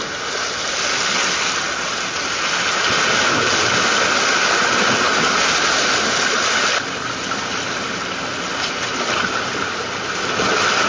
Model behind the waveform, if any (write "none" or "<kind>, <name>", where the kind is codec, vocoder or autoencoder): none